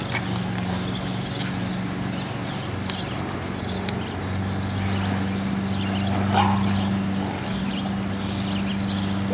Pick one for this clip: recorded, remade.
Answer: recorded